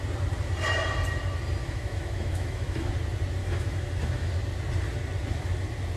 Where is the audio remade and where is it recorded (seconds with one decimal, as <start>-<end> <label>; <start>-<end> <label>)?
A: 0.0-1.6 recorded; 1.6-2.9 remade; 2.9-3.4 recorded; 3.4-4.3 remade; 4.3-6.0 recorded